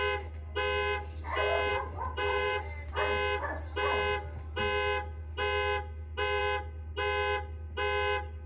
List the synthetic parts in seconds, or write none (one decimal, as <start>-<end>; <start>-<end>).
1.7-2.9